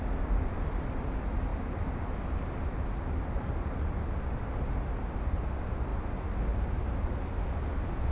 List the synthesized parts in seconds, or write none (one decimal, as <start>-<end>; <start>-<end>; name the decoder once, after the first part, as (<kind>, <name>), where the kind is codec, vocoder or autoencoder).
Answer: none